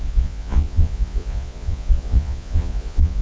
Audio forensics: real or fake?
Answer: fake